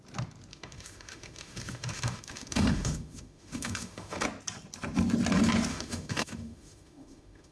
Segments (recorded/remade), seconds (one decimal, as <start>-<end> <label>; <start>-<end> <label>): 0.0-0.5 recorded; 0.5-4.2 remade; 4.2-5.7 recorded; 5.7-7.5 remade